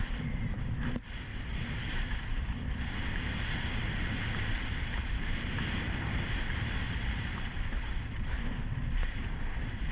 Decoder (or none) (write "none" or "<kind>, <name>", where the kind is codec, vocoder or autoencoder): vocoder, BigVGAN v2